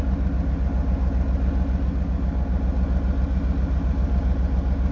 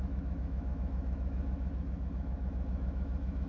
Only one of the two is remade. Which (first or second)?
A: second